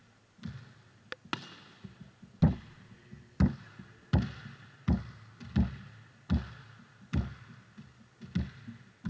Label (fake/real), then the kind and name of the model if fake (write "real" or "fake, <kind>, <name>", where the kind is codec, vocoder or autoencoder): real